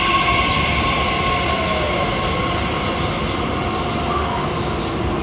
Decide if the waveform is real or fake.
real